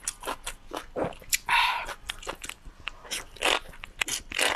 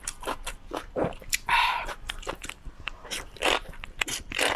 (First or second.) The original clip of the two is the first